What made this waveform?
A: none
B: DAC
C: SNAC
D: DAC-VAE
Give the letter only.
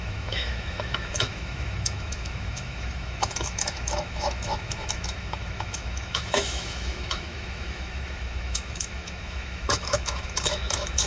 D